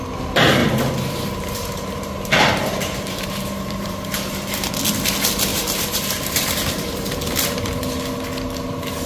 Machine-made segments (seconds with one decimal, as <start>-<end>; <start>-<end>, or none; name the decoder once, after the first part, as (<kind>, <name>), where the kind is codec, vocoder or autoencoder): 0.6-4.7 (vocoder, BigVGAN v2); 5.5-8.0